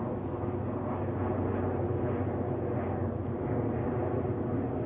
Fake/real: real